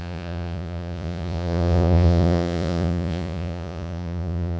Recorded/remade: remade